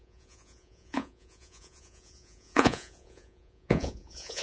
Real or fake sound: fake